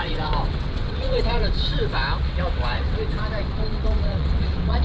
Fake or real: fake